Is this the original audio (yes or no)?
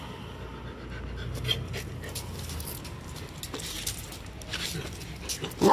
yes